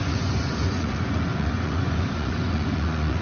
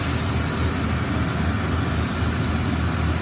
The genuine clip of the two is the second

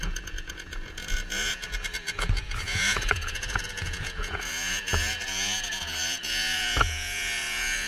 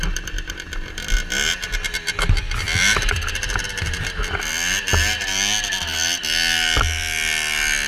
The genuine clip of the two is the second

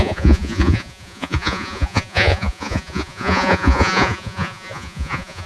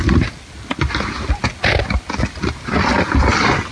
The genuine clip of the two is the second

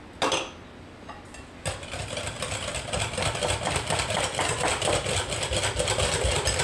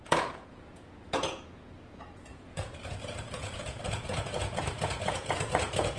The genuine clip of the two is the first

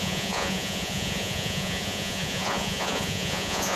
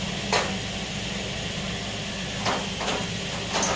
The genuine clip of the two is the second